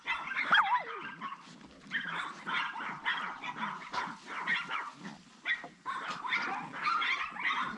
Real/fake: real